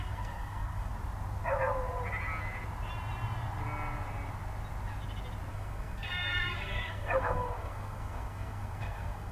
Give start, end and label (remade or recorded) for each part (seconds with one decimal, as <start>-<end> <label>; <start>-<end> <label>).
0.0-0.9 remade; 0.9-5.5 recorded; 5.5-9.3 remade